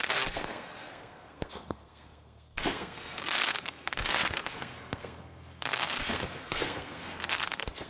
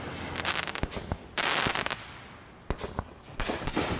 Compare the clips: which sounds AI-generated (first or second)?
first